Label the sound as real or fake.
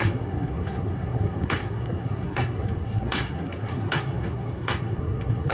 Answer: fake